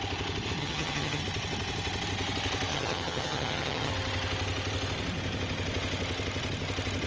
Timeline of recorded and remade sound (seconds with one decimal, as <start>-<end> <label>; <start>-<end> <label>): 0.0-0.6 recorded; 0.6-1.2 remade; 1.2-2.7 recorded; 2.7-3.9 remade; 3.9-7.1 recorded